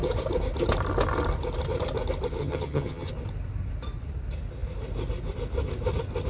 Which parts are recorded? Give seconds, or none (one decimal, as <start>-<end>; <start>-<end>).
0.0-2.4; 3.1-6.3